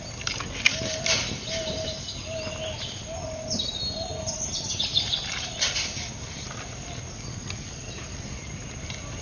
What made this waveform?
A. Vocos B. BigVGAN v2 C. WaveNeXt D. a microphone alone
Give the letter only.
D